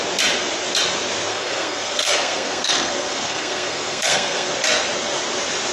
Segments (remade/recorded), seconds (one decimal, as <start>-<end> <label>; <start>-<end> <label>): 0.0-1.3 recorded; 1.3-4.5 remade; 4.5-5.7 recorded